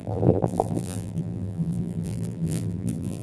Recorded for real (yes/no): no